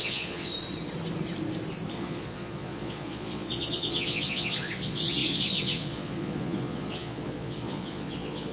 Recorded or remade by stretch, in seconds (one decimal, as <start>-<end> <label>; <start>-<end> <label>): 0.0-0.5 remade; 0.5-1.9 recorded; 1.9-8.5 remade